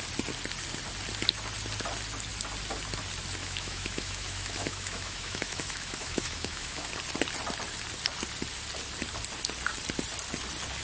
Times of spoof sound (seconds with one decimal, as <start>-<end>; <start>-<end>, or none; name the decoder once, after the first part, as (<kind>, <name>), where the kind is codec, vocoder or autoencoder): 3.4-6.9 (autoencoder, DAC-VAE)